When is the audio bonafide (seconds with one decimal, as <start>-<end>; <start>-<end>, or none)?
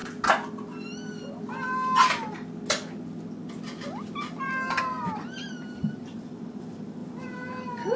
0.0-4.8